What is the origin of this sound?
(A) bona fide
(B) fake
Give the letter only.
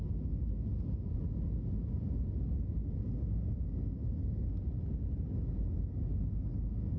A